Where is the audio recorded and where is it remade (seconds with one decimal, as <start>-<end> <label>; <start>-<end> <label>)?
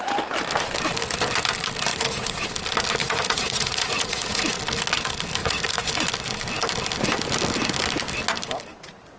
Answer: 0.0-1.9 recorded; 1.9-2.5 remade; 2.5-3.0 recorded; 3.0-4.6 remade; 4.6-5.4 recorded; 5.4-5.9 remade; 5.9-9.2 recorded